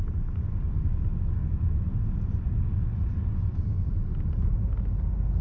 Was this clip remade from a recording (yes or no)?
no